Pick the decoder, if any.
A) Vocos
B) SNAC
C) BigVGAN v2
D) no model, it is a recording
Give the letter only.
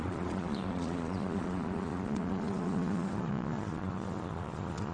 A